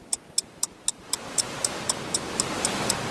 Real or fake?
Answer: fake